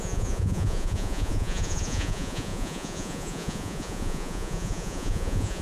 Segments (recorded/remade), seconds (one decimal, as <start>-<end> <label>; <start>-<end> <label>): 0.0-5.6 remade